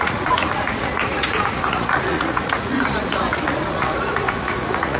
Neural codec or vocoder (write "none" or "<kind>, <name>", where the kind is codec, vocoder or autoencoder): vocoder, Vocos